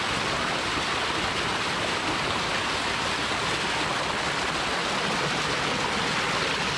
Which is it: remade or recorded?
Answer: recorded